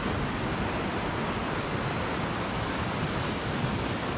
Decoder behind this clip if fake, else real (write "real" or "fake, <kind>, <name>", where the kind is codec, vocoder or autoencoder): real